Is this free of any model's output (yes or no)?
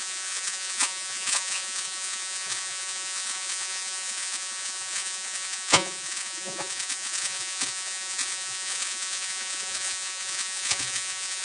no